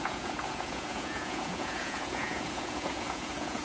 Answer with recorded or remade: remade